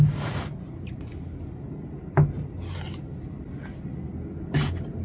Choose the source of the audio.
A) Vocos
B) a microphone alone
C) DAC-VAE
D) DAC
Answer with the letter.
B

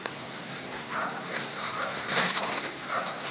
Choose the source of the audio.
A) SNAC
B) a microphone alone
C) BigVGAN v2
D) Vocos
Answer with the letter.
A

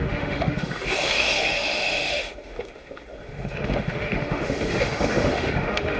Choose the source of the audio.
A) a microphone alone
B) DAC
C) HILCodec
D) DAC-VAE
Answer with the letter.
D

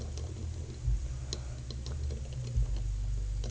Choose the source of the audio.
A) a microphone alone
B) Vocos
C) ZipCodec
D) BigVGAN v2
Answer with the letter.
A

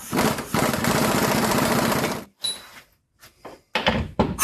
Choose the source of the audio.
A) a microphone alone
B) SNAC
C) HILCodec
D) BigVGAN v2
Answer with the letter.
A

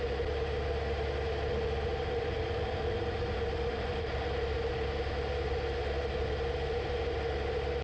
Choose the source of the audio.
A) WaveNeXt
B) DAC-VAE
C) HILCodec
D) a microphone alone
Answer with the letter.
D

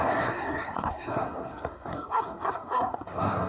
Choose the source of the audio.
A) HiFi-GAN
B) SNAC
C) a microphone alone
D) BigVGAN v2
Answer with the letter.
B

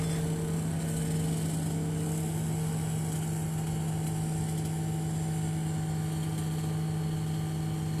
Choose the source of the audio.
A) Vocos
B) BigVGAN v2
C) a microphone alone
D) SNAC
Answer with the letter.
C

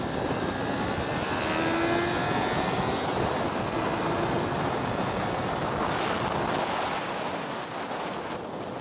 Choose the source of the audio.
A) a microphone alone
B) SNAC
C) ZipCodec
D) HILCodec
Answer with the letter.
A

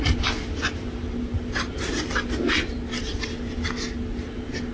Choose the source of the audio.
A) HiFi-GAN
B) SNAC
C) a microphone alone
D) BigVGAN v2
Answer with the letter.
C